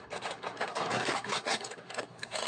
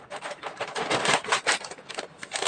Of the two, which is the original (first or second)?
second